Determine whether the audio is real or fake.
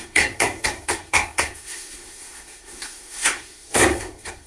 fake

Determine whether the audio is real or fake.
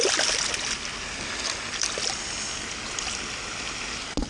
real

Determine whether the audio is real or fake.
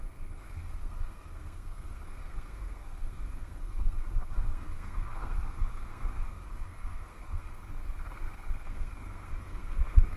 fake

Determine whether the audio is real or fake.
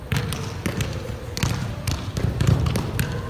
real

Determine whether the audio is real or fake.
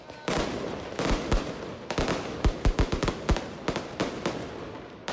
real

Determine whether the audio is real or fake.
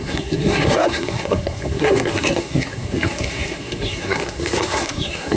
fake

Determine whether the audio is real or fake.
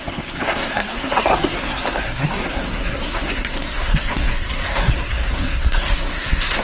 fake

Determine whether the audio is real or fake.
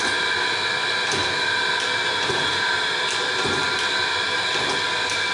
real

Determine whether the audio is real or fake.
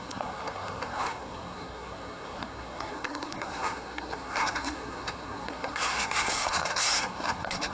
fake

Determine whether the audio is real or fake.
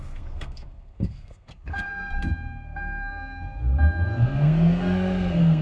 fake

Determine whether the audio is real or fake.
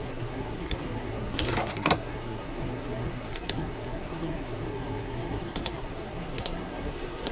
fake